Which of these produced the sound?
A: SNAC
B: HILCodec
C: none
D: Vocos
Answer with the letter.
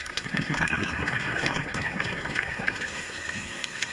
A